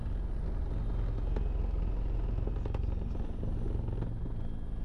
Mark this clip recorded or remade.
recorded